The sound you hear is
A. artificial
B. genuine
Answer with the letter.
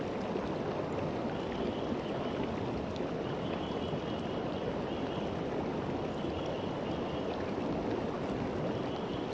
B